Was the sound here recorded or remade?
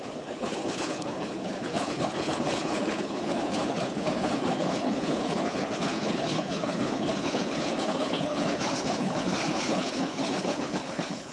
remade